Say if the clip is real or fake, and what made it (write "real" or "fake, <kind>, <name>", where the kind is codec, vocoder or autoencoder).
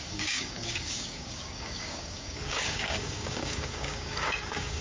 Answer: fake, codec, DAC